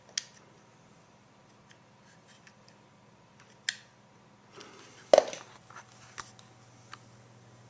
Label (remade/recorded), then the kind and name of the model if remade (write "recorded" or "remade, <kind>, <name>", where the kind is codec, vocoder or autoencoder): recorded